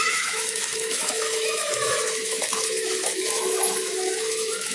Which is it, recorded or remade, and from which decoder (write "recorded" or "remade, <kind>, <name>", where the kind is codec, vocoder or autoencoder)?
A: remade, autoencoder, DAC-VAE